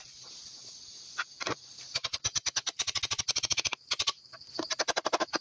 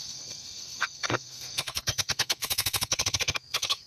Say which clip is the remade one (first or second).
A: second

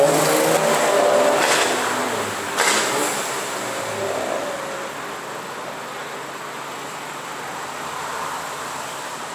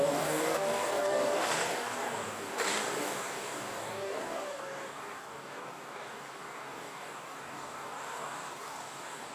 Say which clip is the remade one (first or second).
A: second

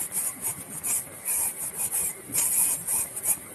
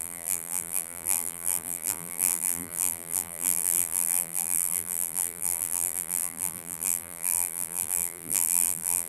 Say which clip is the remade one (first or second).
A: second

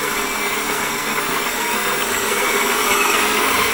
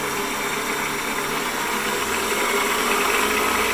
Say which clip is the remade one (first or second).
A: first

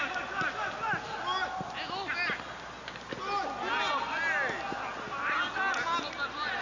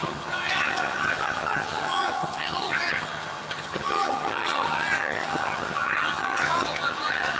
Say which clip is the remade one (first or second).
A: second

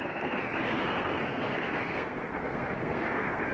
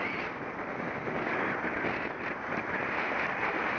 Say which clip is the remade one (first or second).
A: first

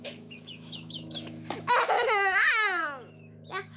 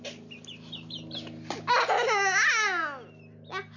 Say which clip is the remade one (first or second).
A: first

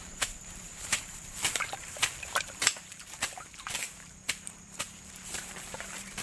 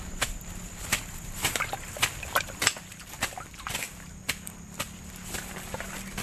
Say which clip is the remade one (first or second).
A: first